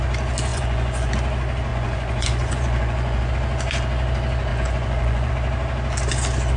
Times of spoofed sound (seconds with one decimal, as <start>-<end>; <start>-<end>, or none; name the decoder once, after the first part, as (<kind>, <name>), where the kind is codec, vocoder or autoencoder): 0.5-1.1 (vocoder, Vocos); 1.7-3.3; 4.5-5.3